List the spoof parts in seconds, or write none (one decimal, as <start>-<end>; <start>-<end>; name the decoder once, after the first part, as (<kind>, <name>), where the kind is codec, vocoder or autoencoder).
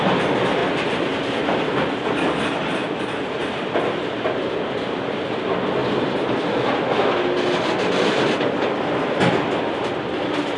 none